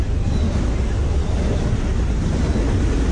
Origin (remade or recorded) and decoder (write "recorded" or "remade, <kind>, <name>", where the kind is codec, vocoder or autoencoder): recorded